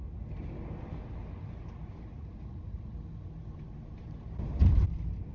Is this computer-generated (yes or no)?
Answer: no